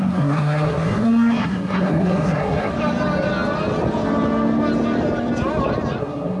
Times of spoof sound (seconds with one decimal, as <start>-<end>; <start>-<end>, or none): 0.0-2.7; 6.0-6.4